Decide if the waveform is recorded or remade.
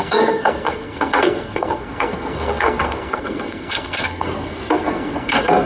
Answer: remade